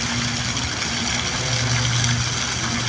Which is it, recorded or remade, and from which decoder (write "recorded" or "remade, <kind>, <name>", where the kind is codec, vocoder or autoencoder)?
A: recorded